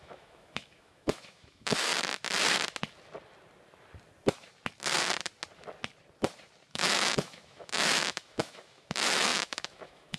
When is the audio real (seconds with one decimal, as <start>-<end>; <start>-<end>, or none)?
1.9-6.7